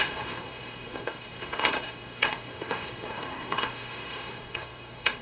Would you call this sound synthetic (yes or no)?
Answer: yes